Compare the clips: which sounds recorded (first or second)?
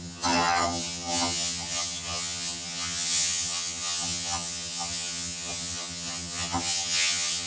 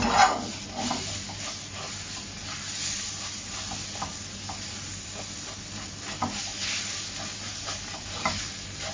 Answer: second